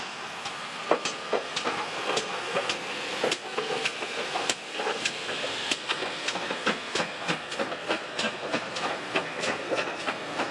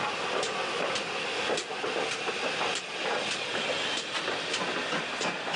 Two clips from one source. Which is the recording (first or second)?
second